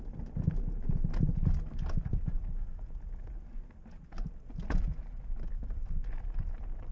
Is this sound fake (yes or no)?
no